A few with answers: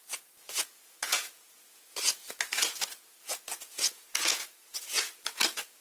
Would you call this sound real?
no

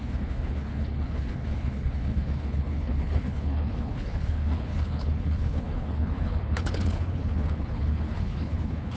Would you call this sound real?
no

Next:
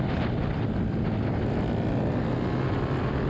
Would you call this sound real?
yes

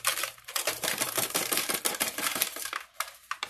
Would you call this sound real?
no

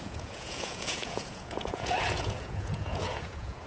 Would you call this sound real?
no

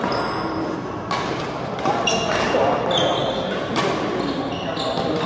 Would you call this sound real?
yes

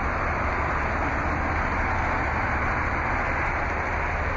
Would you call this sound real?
yes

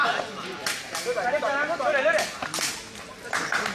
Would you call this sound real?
yes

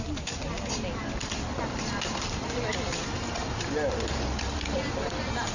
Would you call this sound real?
yes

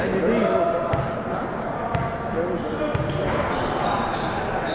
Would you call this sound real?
yes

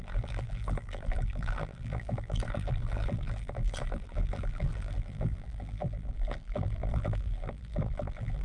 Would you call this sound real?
no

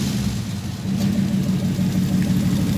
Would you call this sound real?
yes